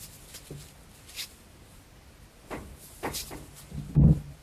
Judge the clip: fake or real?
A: real